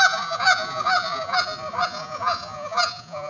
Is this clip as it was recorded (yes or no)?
no